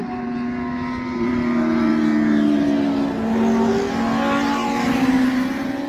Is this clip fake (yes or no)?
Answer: no